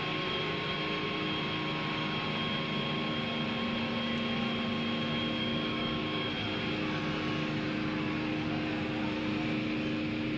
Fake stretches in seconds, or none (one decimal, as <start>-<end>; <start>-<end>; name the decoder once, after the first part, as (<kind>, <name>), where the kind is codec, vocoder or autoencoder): 5.4-6.3 (codec, DAC)